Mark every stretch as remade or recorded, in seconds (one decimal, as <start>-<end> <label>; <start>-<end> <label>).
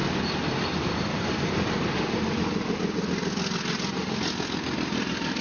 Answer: 0.0-5.4 recorded